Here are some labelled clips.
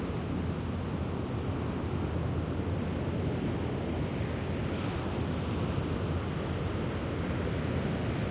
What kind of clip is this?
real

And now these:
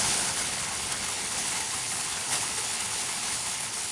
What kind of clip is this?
fake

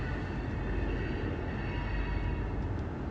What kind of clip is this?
real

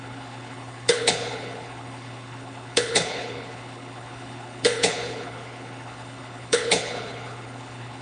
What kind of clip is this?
fake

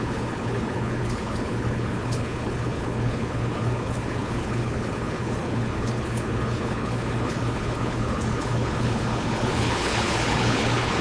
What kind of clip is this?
fake